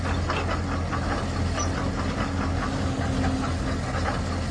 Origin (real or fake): real